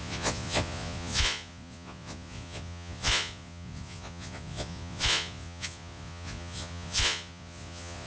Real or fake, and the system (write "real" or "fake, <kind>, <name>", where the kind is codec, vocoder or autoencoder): fake, vocoder, Vocos